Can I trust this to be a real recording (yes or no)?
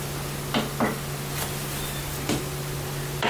yes